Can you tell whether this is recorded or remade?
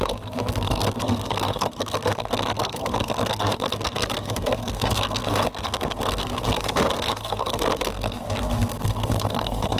remade